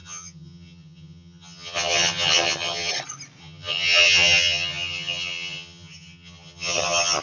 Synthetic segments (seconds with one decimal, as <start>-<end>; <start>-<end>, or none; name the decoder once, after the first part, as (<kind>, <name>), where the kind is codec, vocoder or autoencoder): 0.0-2.9 (vocoder, HiFi-GAN); 3.4-7.2